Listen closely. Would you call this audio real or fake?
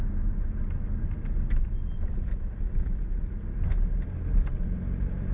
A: real